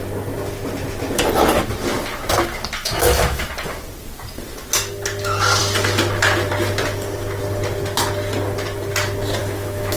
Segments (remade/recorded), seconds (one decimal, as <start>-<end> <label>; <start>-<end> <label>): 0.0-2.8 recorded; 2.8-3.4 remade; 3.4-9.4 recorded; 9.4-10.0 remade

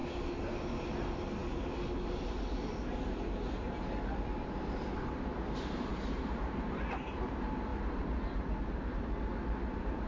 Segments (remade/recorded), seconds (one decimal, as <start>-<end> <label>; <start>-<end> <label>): 0.0-5.9 recorded; 5.9-7.2 remade; 7.2-10.1 recorded

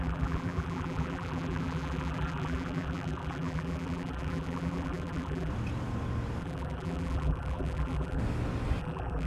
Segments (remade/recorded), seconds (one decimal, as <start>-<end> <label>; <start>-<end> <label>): 0.0-5.5 remade; 5.5-6.4 recorded; 6.4-8.2 remade; 8.2-8.8 recorded; 8.8-9.3 remade